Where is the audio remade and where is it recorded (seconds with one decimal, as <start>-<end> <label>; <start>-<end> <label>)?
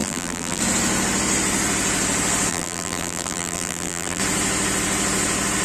0.0-0.6 remade; 0.6-2.5 recorded; 2.5-4.2 remade; 4.2-5.6 recorded